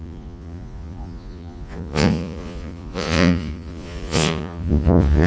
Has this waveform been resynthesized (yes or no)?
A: yes